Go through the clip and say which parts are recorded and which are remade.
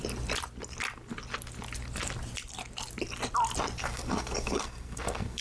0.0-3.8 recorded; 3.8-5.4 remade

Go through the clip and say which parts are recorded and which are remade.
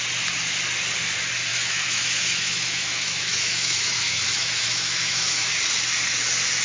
0.0-1.5 recorded; 1.5-5.5 remade; 5.5-6.6 recorded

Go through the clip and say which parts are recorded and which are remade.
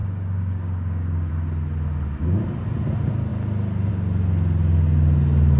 0.0-1.3 remade; 1.3-5.6 recorded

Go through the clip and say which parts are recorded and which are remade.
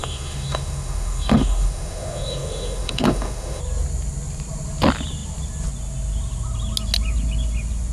0.0-3.6 remade; 3.6-7.9 recorded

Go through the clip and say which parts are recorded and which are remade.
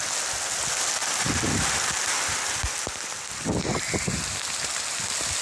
0.0-5.4 recorded